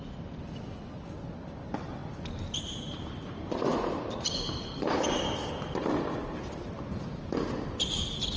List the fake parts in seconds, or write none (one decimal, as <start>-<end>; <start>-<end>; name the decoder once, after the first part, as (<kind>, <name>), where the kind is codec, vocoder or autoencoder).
3.7-6.8 (vocoder, BigVGAN v2)